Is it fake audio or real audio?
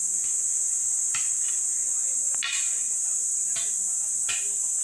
real